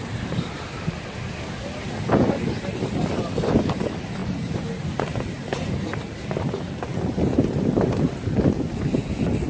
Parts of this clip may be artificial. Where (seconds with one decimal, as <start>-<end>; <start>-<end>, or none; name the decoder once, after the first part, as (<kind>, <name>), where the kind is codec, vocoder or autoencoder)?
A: 4.2-5.0 (vocoder, BigVGAN v2); 6.9-7.6